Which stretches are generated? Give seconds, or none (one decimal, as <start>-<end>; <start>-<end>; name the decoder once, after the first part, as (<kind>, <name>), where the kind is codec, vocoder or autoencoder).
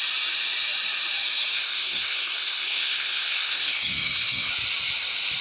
1.5-4.5 (codec, SNAC)